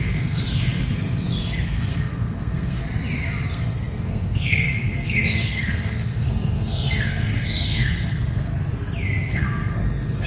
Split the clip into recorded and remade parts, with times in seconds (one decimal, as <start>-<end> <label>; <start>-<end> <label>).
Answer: 0.0-2.8 remade; 2.8-3.5 recorded; 3.5-8.5 remade; 8.5-9.3 recorded; 9.3-10.3 remade